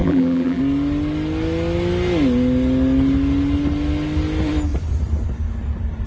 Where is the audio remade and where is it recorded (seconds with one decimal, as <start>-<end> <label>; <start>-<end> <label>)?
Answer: 0.0-0.6 remade; 0.6-6.1 recorded